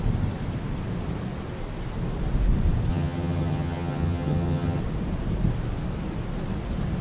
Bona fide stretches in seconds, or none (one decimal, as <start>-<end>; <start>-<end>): 0.0-2.9; 4.8-7.0